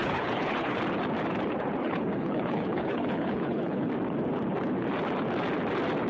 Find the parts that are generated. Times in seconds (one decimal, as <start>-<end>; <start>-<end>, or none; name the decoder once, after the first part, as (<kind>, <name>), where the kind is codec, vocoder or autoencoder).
0.0-0.8 (codec, HILCodec); 1.8-3.9